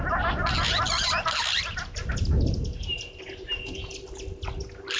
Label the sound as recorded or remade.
recorded